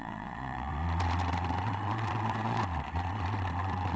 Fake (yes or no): yes